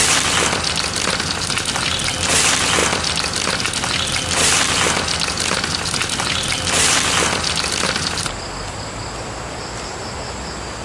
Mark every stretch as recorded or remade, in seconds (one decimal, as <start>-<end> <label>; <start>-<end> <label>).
0.0-10.8 recorded